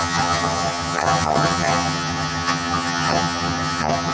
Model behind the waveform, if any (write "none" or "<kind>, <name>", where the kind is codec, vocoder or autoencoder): vocoder, HiFi-GAN